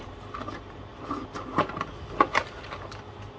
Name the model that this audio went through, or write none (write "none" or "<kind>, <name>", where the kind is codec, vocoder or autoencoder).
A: none